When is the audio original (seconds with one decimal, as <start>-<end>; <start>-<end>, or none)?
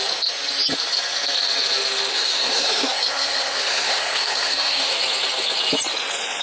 0.0-2.1; 4.9-6.4